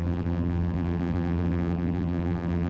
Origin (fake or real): fake